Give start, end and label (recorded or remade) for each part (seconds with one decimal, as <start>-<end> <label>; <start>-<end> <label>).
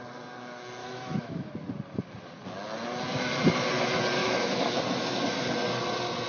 0.0-0.8 recorded; 0.8-1.5 remade; 1.5-4.2 recorded; 4.2-4.8 remade; 4.8-6.3 recorded